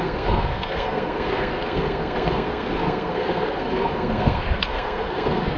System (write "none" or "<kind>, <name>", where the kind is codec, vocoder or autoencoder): codec, SNAC